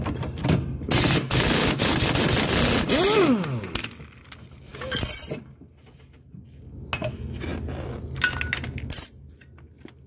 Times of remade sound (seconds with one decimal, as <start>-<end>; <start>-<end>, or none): none